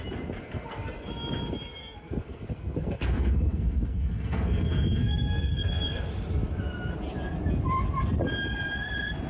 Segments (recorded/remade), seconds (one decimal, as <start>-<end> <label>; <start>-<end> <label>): 0.0-0.4 recorded; 0.4-1.1 remade; 1.1-1.8 recorded; 1.8-6.1 remade; 6.1-9.3 recorded